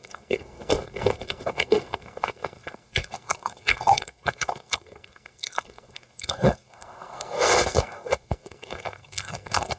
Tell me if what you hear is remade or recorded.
remade